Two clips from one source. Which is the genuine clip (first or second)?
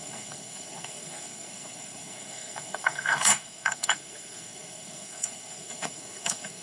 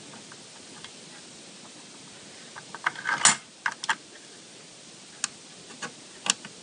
second